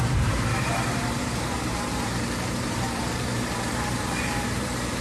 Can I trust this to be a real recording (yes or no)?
no